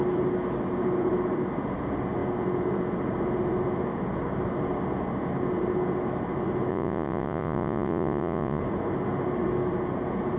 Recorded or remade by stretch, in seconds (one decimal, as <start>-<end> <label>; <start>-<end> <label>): 0.0-6.7 recorded; 6.7-8.6 remade; 8.6-10.4 recorded